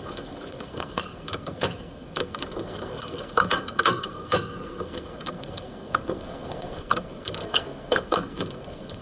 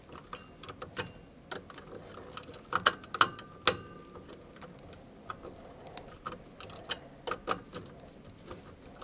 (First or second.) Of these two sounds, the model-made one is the first